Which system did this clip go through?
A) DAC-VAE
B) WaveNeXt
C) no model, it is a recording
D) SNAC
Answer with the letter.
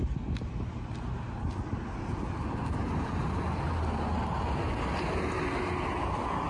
C